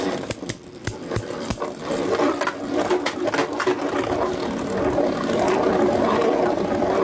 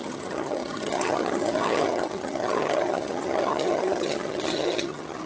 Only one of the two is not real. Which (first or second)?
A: second